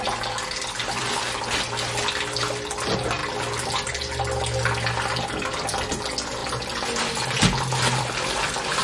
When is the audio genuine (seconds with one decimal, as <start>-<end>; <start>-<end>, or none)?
0.0-8.8